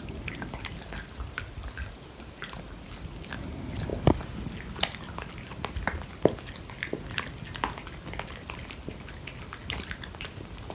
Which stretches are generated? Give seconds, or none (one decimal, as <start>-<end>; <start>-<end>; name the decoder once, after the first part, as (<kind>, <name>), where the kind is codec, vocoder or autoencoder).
none